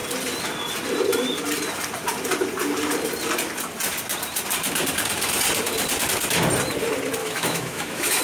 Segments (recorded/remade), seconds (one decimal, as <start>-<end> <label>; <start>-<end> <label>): 0.0-7.2 recorded; 7.2-8.2 remade